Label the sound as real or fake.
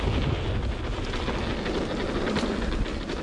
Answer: real